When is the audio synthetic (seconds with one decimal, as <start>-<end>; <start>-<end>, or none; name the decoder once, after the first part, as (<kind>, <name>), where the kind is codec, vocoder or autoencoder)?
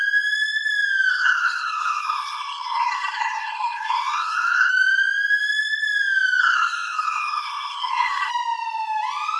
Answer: 1.1-4.7 (codec, SNAC); 6.4-8.3